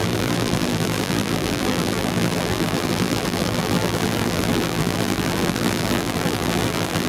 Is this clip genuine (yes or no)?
no